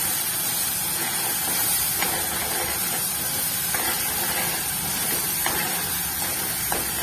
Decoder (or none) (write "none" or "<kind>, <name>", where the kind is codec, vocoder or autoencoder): none